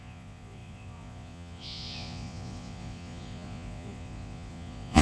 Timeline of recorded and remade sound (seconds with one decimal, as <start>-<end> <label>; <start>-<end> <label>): 0.0-5.0 remade